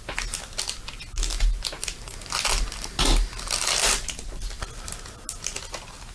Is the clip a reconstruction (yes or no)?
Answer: no